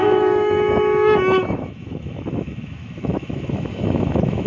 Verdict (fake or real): fake